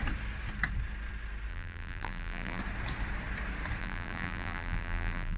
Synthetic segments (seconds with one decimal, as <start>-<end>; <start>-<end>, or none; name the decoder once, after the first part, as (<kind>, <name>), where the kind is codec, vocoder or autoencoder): 1.5-2.6 (vocoder, BigVGAN v2); 3.8-5.4